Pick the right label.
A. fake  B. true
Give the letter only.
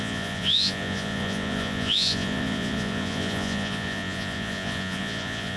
A